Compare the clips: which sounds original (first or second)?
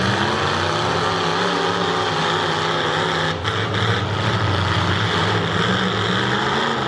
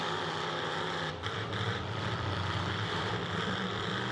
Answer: first